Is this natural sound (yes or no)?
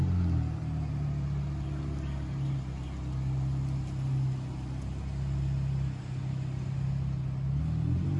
yes